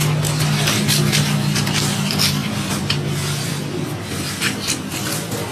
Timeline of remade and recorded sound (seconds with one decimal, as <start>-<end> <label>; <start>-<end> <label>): 0.0-2.4 recorded; 2.4-2.9 remade; 2.9-5.5 recorded